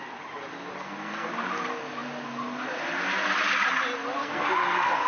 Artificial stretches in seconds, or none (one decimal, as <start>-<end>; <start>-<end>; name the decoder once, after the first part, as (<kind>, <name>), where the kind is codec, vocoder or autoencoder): 0.8-1.3 (codec, SNAC); 4.2-5.1